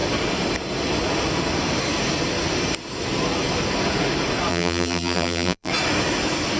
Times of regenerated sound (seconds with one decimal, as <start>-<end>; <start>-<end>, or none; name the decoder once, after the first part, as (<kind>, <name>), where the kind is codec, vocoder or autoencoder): 4.5-5.7 (vocoder, BigVGAN v2)